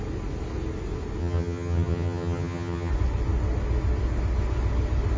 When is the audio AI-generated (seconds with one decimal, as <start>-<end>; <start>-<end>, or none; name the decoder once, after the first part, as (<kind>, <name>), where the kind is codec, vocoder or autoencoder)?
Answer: 1.2-2.9 (vocoder, HiFi-GAN)